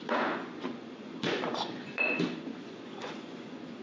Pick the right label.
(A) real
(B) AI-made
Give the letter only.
B